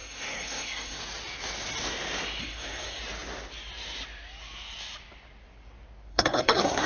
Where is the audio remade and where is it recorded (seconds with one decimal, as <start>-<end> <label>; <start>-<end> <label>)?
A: 0.0-1.0 remade; 1.0-2.4 recorded; 2.4-3.0 remade; 3.0-6.1 recorded; 6.1-6.9 remade